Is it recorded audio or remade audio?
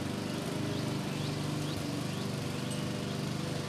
recorded